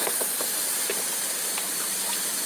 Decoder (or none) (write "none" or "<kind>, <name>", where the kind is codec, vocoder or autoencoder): vocoder, BigVGAN v2